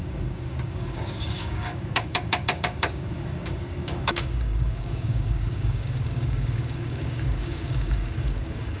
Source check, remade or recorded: remade